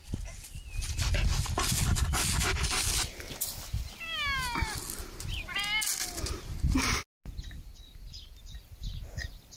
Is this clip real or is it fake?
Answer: real